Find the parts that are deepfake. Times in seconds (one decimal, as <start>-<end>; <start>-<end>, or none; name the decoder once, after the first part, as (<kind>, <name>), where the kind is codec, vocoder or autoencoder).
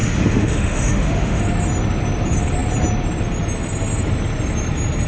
0.0-1.4 (autoencoder, DAC-VAE)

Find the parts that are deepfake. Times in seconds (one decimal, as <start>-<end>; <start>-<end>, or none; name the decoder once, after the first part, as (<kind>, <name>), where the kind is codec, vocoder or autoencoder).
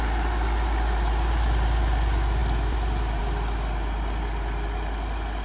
none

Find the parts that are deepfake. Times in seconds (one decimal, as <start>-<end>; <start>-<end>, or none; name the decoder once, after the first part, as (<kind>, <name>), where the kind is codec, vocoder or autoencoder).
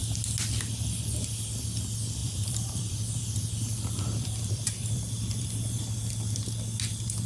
2.2-6.3 (vocoder, BigVGAN v2)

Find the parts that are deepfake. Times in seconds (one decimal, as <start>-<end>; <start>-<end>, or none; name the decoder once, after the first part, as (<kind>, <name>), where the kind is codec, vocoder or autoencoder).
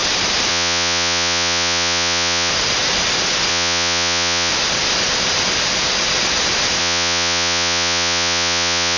0.5-2.5 (vocoder, WaveNeXt); 3.5-4.5; 6.8-9.0